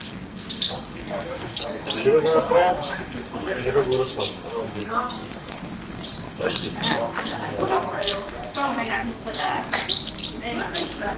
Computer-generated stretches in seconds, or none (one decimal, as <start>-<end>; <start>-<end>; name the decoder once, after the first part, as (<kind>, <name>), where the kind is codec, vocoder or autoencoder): 0.0-9.8 (codec, SNAC); 10.7-11.2

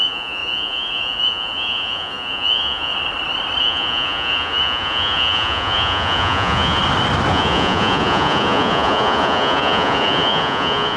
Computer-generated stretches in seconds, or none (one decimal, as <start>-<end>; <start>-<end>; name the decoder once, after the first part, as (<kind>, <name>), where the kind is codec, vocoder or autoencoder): 0.0-2.9 (vocoder, Vocos); 3.6-6.8; 7.3-11.0

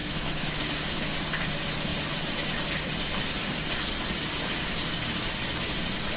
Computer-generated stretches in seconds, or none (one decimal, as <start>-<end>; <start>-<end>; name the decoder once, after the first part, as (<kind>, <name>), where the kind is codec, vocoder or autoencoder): 0.0-0.6 (autoencoder, DAC-VAE)